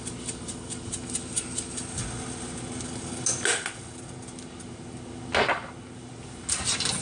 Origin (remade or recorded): recorded